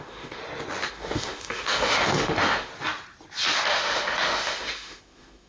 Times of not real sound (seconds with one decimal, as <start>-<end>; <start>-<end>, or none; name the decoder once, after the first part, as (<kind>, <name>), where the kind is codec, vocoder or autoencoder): 0.0-0.4 (autoencoder, DAC-VAE); 0.9-2.7; 3.7-5.5